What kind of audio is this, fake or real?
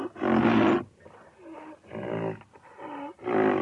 real